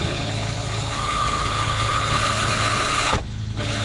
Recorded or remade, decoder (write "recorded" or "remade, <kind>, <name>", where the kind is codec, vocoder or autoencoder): remade, codec, HILCodec